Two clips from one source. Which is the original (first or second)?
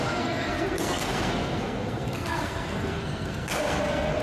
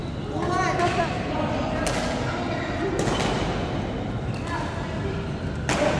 second